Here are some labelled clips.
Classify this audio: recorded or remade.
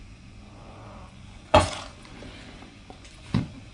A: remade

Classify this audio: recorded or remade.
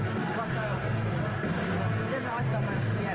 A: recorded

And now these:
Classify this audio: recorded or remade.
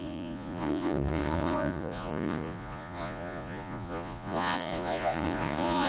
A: remade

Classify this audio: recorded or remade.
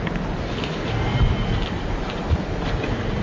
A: recorded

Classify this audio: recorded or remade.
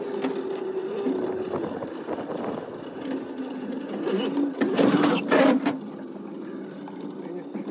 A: recorded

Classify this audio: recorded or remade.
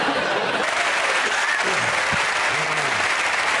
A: recorded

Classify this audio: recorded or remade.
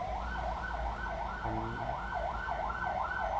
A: recorded